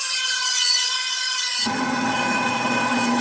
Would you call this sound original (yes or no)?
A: no